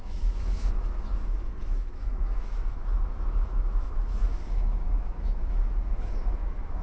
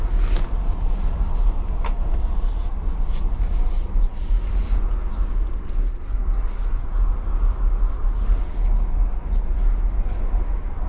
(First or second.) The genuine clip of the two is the second